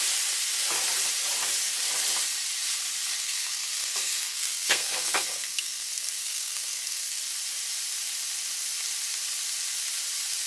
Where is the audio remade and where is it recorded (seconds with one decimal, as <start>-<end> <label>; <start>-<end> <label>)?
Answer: 0.0-3.2 recorded; 3.2-7.2 remade; 7.2-10.5 recorded